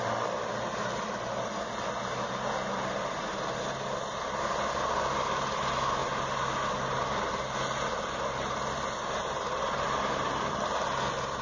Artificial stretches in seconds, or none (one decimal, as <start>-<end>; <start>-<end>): none